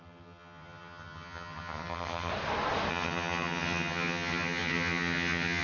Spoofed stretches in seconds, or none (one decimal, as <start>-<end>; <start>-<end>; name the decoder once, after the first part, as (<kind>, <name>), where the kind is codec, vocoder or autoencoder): 0.0-2.3 (vocoder, HiFi-GAN); 2.9-5.6